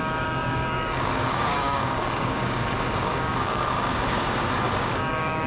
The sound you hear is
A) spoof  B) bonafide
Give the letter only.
A